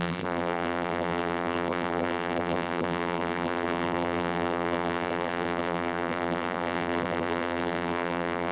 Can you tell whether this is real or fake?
fake